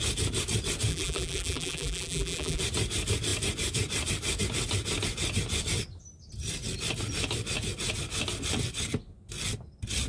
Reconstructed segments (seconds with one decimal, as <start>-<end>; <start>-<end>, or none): 0.9-2.6